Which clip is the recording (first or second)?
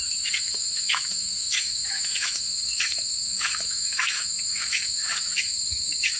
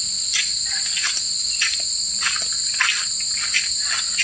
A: second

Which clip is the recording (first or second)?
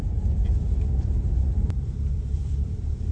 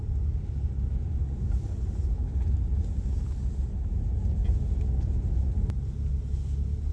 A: second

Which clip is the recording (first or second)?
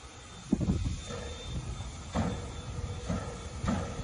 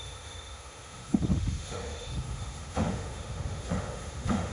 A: first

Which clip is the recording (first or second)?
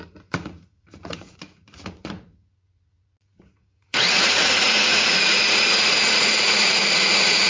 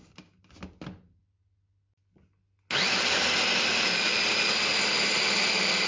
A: second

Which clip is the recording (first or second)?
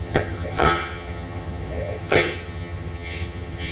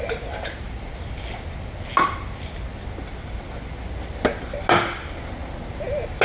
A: second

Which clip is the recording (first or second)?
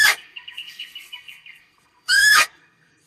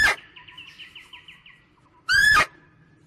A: second